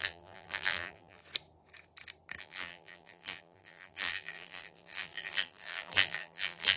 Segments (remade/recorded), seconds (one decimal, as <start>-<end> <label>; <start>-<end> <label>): 0.0-1.2 remade; 1.2-2.4 recorded; 2.4-6.8 remade